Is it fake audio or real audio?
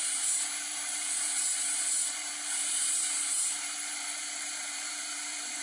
fake